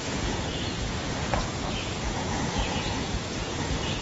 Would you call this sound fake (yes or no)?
yes